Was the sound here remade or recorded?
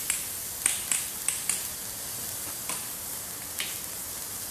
recorded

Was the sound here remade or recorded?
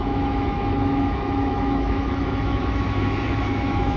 remade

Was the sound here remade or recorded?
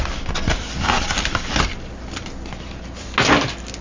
recorded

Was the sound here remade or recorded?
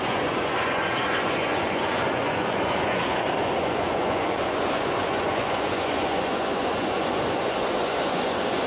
remade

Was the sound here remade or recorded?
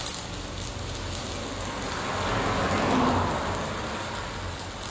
recorded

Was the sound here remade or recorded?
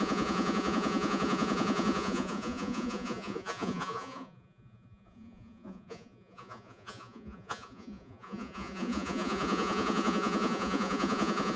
remade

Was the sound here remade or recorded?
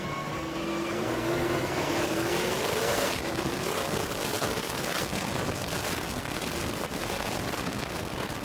remade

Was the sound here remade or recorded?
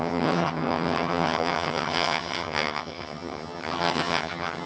remade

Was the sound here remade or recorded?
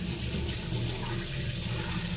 recorded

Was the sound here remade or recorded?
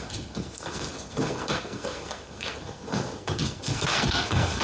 remade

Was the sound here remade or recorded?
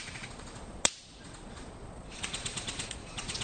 remade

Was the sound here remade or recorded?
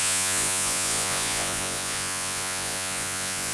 remade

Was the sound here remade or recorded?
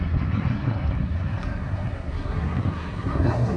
remade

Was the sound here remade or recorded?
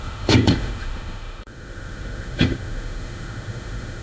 remade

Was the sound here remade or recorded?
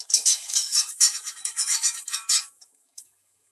remade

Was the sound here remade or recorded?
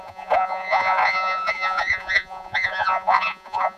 remade